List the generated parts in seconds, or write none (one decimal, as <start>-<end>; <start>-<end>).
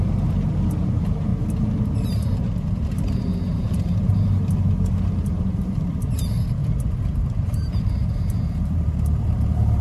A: 0.0-1.3; 2.2-4.1; 4.7-9.8